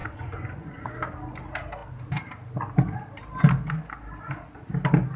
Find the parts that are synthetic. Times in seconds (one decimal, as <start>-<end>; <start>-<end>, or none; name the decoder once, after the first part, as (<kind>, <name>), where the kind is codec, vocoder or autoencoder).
0.0-0.9 (vocoder, Vocos)